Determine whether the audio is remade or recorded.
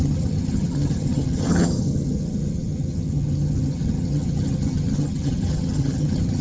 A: remade